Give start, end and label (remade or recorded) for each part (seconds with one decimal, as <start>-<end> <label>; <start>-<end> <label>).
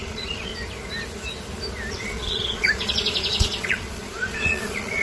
0.0-0.5 remade; 0.5-1.9 recorded; 1.9-5.0 remade